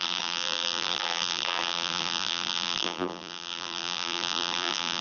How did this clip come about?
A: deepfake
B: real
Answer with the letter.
A